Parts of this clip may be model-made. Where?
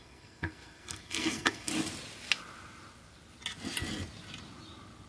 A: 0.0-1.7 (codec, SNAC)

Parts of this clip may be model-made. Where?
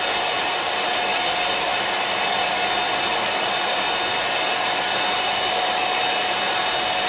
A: none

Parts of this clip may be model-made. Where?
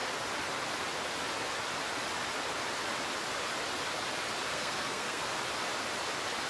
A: 4.5-5.2 (codec, SNAC)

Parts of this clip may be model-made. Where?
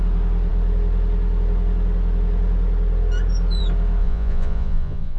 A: 4.0-5.2 (vocoder, Vocos)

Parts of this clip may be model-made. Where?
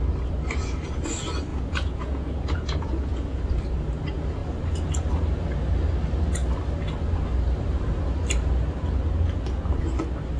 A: 1.5-3.4 (vocoder, Vocos)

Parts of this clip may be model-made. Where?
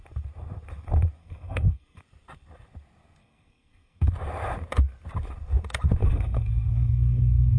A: 1.2-2.0 (codec, SNAC); 3.2-4.1; 6.0-7.6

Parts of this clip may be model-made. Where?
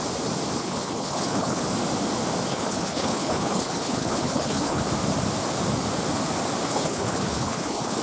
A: 0.6-1.6 (codec, HILCodec); 2.5-4.8; 6.7-8.0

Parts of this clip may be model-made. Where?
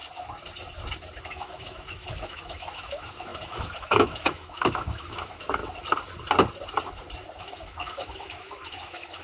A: 1.2-5.6 (autoencoder, DAC-VAE); 7.4-9.2